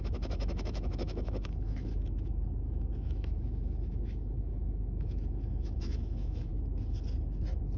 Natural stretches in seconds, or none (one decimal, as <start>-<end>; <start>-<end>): 6.5-7.8